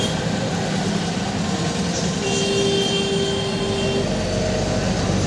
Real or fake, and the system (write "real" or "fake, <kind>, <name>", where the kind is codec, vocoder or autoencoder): real